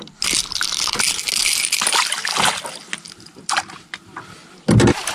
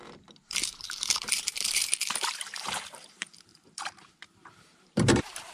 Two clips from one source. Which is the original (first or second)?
first